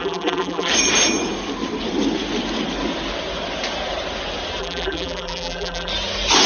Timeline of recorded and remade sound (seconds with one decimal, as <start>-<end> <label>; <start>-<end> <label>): 0.0-0.7 remade; 0.7-4.6 recorded; 4.6-5.9 remade; 5.9-6.5 recorded